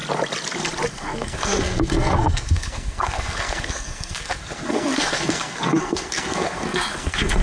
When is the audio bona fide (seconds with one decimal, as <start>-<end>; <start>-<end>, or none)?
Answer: 0.0-0.9